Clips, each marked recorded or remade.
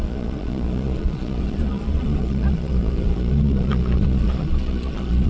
remade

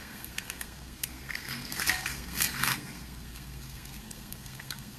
remade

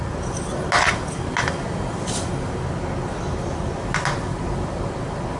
recorded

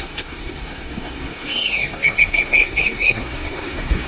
remade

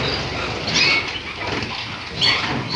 recorded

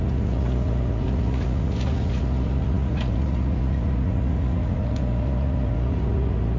remade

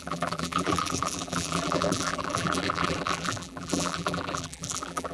remade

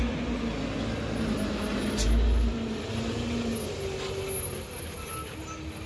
recorded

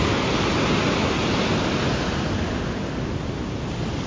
recorded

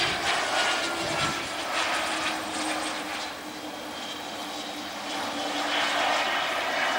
recorded